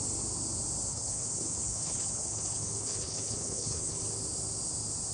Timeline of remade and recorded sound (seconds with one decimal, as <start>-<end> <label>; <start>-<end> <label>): 0.0-0.9 recorded; 0.9-4.0 remade; 4.0-5.1 recorded